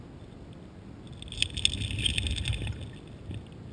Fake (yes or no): no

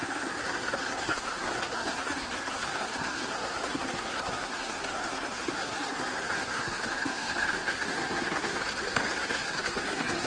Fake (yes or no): yes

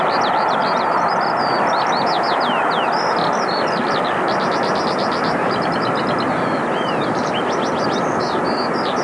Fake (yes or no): no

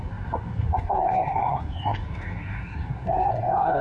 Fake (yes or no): yes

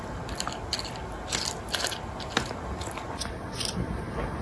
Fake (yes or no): no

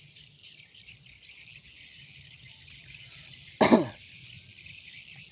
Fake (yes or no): no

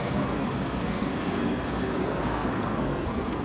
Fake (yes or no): yes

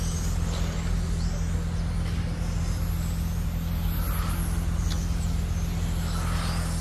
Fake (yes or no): no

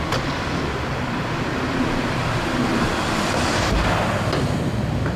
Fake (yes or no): no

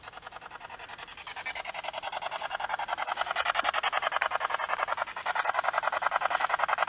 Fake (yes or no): no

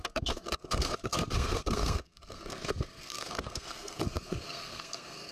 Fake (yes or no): yes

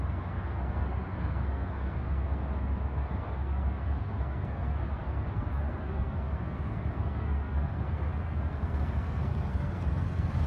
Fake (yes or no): yes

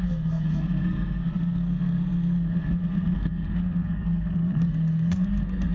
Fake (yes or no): yes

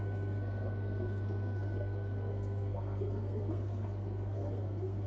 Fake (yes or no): yes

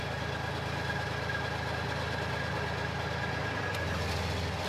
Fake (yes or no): no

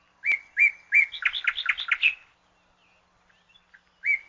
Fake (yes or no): no